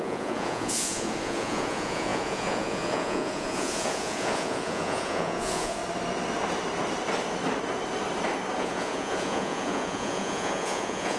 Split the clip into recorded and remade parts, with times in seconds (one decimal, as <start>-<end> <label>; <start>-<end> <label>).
0.0-5.8 remade; 5.8-8.6 recorded; 8.6-11.2 remade